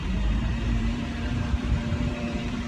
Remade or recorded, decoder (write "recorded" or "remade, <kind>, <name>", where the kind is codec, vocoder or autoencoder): remade, vocoder, BigVGAN v2